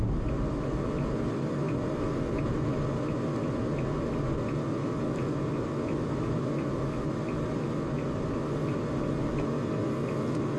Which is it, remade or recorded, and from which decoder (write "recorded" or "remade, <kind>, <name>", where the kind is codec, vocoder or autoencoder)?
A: recorded